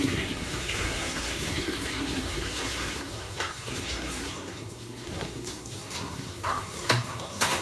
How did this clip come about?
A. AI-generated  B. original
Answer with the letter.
A